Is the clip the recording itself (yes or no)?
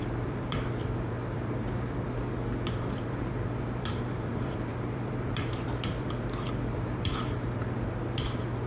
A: no